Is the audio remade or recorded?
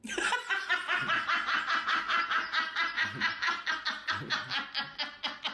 recorded